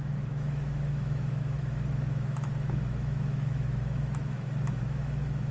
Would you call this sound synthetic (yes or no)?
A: yes